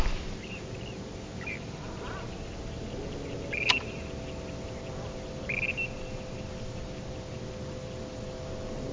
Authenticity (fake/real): real